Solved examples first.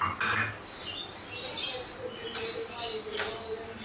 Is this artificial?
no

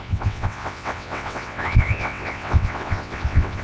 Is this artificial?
yes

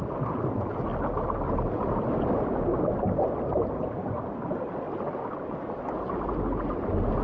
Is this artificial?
no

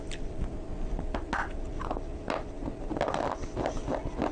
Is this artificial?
no